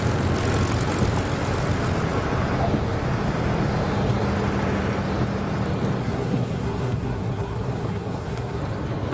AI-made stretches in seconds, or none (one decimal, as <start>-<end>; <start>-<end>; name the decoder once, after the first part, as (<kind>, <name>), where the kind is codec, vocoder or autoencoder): 6.0-8.6 (codec, SNAC)